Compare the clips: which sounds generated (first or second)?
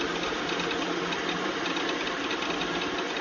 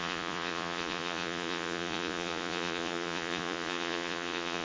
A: second